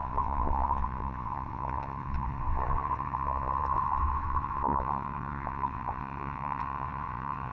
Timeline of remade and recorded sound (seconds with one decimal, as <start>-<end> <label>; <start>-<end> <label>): 0.0-7.5 remade